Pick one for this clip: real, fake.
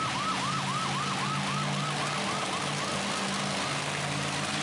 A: real